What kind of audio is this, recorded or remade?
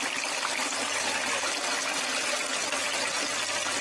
recorded